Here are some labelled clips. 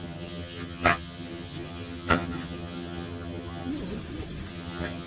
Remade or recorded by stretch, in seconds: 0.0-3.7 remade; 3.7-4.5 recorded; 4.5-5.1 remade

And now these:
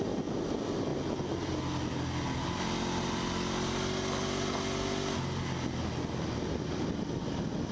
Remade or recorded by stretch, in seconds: 0.0-7.7 recorded